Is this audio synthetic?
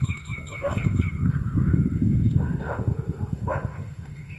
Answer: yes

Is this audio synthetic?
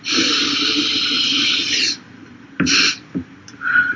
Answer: no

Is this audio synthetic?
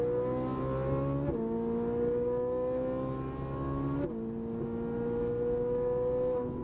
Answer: no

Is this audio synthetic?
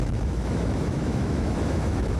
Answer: yes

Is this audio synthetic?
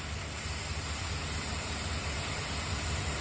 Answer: no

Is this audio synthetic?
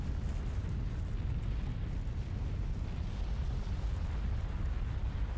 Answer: no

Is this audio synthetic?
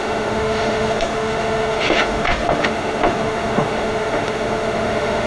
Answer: yes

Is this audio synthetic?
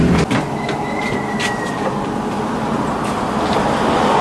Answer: no